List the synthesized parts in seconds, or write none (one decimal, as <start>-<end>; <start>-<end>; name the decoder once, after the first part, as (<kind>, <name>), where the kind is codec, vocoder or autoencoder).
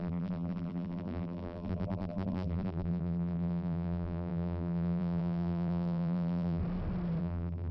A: 0.0-6.6 (vocoder, BigVGAN v2); 7.2-7.7